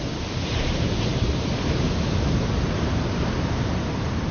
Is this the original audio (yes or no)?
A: no